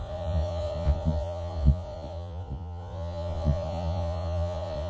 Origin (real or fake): fake